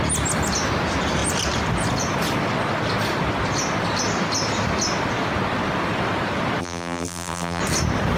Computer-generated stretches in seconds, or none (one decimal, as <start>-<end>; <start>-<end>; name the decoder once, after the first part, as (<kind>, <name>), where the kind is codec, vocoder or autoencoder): 6.6-7.6 (vocoder, BigVGAN v2)